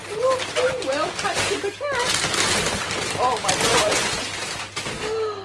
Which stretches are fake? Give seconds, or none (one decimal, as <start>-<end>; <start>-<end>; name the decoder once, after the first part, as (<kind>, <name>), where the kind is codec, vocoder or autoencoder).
3.7-4.2 (vocoder, Vocos)